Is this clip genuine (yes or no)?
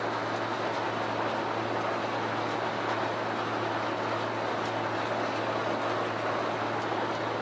yes